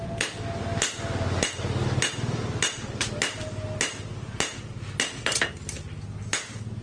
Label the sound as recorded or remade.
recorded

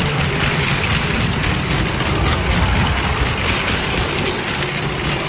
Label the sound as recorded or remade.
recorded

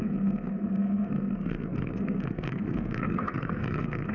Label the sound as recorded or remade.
remade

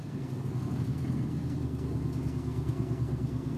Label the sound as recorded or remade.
remade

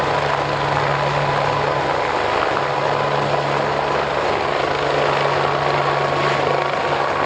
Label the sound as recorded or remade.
recorded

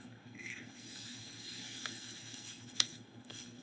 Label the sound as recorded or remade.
remade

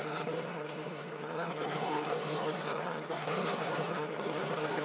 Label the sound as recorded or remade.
remade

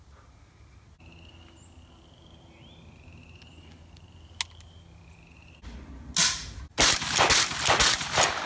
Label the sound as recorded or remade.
recorded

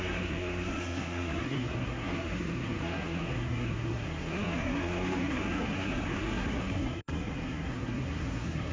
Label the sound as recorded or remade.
remade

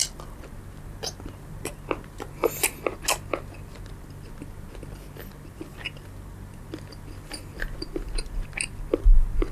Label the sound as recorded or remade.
recorded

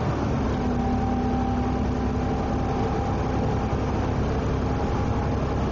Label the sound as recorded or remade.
recorded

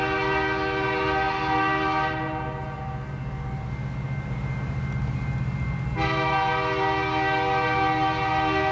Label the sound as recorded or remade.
recorded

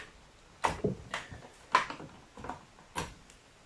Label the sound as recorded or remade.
recorded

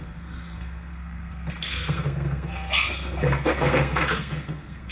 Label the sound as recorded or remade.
remade